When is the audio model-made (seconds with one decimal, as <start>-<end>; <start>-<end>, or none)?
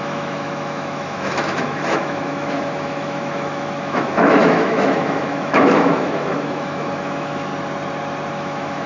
0.0-7.5; 8.3-8.9